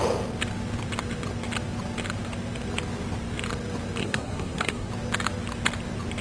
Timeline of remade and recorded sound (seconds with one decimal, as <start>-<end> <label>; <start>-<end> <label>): 0.0-4.0 recorded; 4.0-4.9 remade; 4.9-6.2 recorded